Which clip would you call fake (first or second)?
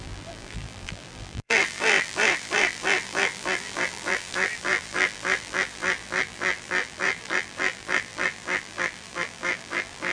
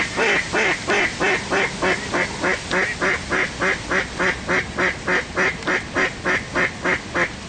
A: first